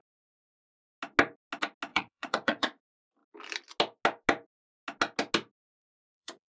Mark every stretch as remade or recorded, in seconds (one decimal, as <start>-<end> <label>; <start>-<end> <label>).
0.0-1.9 recorded; 1.9-2.8 remade; 2.8-5.8 recorded; 5.8-6.6 remade